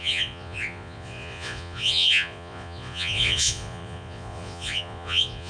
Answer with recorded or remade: remade